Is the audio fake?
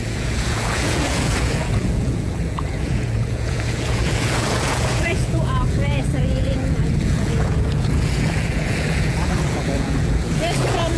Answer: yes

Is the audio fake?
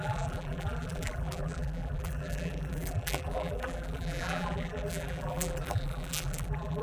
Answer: yes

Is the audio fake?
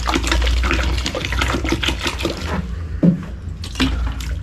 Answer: no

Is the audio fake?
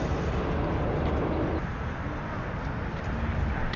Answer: no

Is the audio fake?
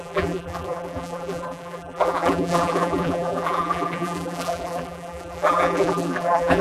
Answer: yes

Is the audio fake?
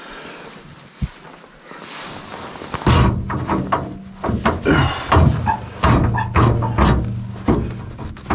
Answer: no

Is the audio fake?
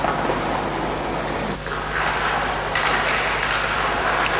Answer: no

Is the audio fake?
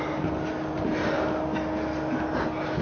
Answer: no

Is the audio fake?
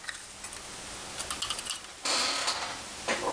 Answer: no